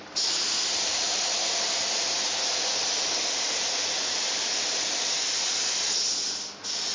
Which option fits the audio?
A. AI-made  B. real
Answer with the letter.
B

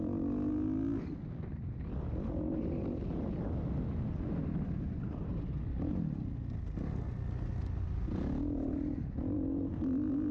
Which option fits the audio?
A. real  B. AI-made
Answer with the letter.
A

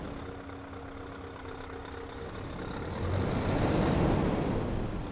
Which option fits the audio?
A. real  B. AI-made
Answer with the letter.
A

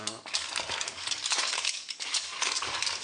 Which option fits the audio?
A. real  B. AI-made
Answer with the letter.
B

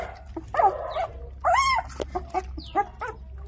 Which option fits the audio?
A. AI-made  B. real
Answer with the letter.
B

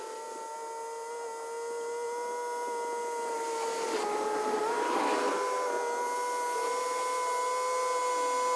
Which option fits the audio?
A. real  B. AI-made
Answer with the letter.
A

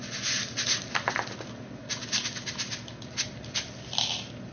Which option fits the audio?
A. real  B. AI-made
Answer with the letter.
A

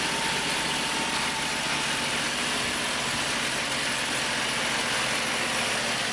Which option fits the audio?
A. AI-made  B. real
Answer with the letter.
B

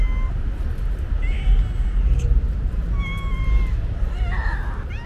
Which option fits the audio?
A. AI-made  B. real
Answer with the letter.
B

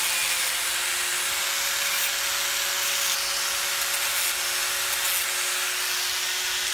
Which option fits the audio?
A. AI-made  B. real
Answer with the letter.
B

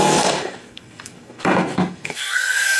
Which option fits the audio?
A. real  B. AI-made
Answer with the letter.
B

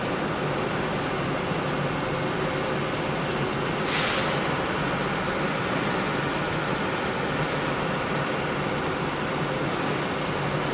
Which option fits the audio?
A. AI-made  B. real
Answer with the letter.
B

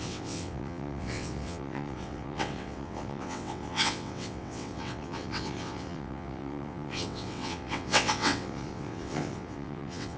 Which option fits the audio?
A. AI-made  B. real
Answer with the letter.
A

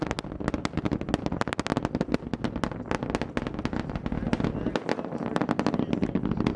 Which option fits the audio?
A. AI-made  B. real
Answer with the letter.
B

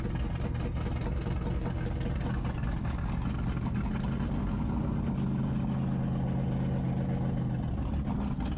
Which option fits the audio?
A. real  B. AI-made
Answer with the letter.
A